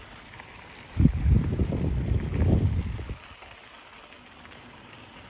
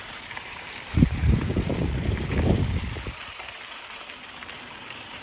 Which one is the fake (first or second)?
second